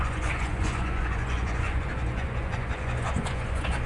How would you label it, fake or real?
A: fake